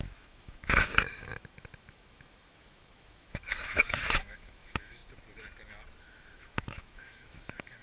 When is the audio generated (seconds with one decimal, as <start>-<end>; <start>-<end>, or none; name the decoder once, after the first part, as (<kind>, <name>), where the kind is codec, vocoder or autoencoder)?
0.0-5.0 (autoencoder, DAC-VAE); 6.0-7.8